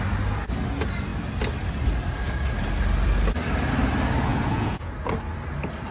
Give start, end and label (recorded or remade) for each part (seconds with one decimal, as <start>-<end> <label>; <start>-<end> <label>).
0.0-4.3 recorded; 4.3-4.9 remade; 4.9-5.9 recorded